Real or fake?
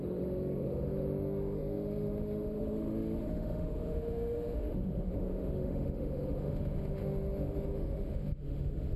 fake